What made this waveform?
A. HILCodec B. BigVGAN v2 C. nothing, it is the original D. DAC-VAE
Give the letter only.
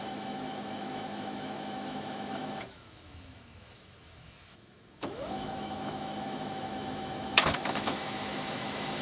D